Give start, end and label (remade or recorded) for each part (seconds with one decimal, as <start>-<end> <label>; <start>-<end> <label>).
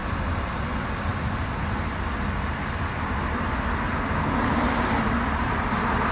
0.0-0.6 remade; 0.6-6.1 recorded